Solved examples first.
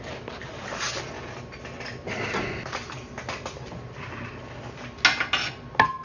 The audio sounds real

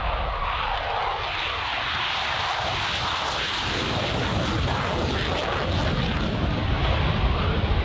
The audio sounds real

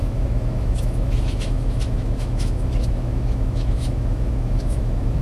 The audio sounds fake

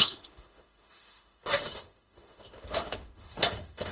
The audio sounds fake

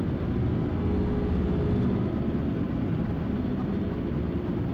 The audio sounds real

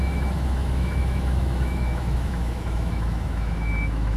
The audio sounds fake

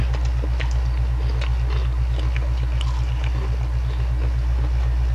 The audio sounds real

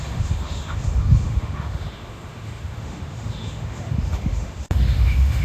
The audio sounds fake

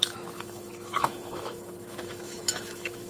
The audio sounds fake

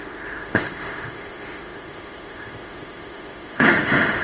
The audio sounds fake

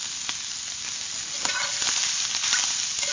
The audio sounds real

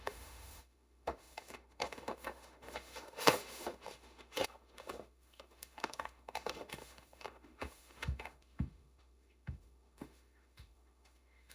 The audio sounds fake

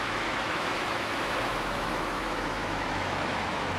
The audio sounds fake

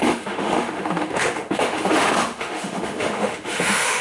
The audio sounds fake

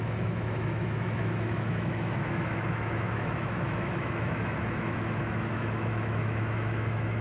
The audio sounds fake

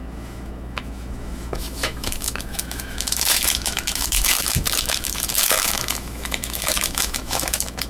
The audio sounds fake